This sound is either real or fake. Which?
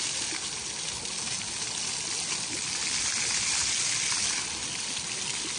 real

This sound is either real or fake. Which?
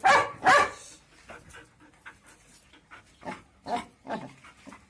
real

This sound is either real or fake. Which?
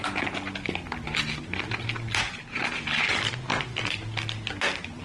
real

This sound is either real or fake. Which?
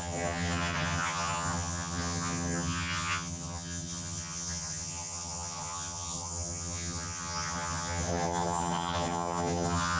fake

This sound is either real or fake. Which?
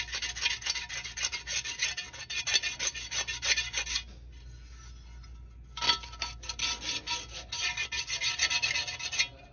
real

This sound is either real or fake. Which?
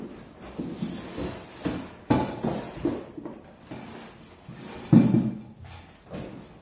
real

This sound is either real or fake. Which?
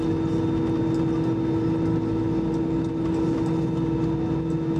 real